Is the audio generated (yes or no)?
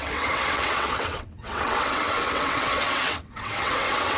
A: yes